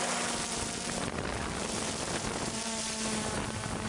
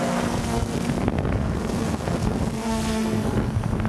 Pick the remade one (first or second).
second